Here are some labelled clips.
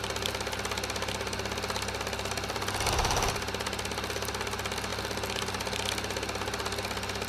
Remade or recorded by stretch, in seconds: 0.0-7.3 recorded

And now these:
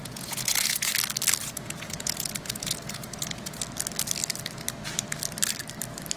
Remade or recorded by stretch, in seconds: 0.0-0.9 remade; 0.9-1.4 recorded; 1.4-3.6 remade; 3.6-6.2 recorded

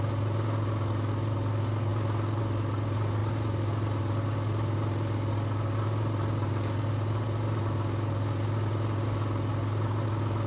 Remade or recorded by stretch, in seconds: 0.0-10.5 recorded

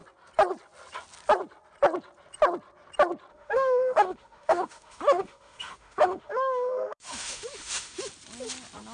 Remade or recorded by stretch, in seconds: 0.0-3.3 recorded; 3.3-8.1 remade; 8.1-8.9 recorded

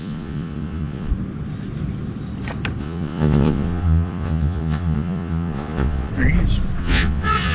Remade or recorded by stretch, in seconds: 0.0-1.1 remade; 1.1-2.8 recorded; 2.8-6.1 remade; 6.1-6.8 recorded; 6.8-7.5 remade

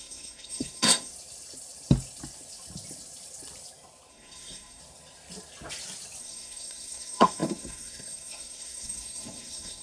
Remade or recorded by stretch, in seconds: 0.0-1.1 remade; 1.1-4.1 recorded; 4.1-4.8 remade; 4.8-6.2 recorded; 6.2-9.8 remade

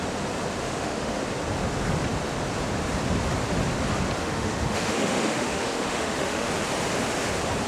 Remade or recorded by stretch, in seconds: 0.0-0.6 recorded; 0.6-1.2 remade; 1.2-4.2 recorded; 4.2-6.5 remade; 6.5-7.7 recorded